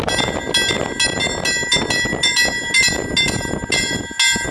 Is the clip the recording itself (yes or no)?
yes